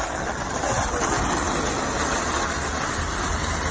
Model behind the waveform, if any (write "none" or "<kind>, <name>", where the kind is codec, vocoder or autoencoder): none